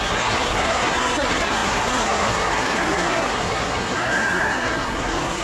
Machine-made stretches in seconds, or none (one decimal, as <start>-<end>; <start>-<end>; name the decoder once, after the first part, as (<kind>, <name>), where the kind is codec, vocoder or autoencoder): 0.0-5.4 (codec, SNAC)